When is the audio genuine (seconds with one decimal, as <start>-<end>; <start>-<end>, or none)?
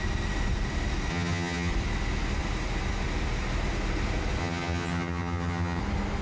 0.0-1.1; 1.7-4.4; 5.8-6.2